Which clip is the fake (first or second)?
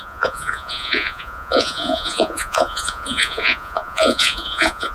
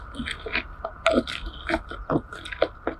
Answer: first